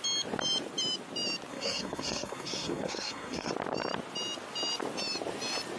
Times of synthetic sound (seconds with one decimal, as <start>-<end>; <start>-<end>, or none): 1.5-3.5

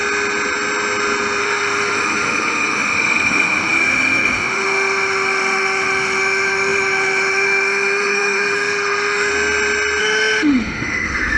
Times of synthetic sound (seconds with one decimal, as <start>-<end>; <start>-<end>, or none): 1.4-9.3; 10.0-11.4

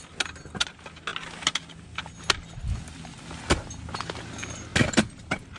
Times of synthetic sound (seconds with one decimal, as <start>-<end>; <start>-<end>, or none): none

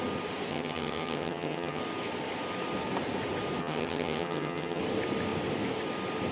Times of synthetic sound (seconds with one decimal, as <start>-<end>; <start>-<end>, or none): 0.5-1.8; 3.6-4.8